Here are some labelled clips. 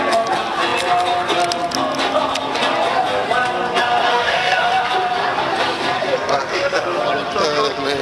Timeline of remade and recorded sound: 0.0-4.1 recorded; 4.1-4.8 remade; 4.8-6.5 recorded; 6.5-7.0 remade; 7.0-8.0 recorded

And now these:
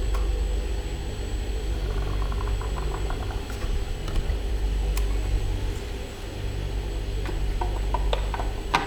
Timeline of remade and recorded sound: 0.0-8.9 recorded

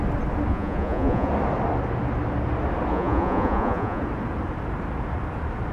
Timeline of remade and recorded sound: 0.0-0.5 recorded; 0.5-1.3 remade; 1.3-2.9 recorded; 2.9-4.0 remade; 4.0-5.7 recorded

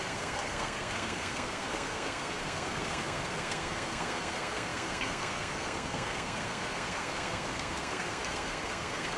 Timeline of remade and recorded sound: 0.0-9.2 remade

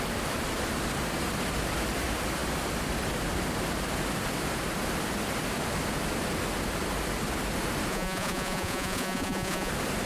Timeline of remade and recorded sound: 0.0-7.9 recorded; 7.9-9.7 remade; 9.7-10.1 recorded